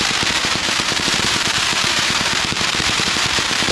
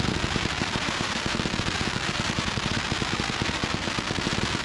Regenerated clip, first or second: first